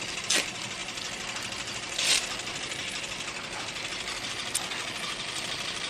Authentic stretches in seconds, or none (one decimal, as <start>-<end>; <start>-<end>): 0.0-5.9